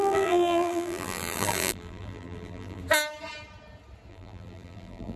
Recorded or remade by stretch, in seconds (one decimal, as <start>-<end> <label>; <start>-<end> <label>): 0.0-2.8 remade; 2.8-4.1 recorded; 4.1-5.2 remade